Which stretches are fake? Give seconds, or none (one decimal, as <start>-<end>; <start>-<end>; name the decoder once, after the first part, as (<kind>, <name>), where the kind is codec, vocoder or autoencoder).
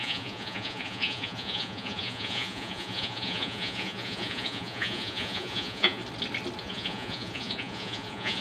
0.0-6.0 (vocoder, Vocos); 6.6-8.4